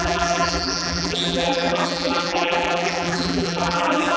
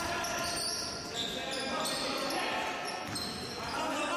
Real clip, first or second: second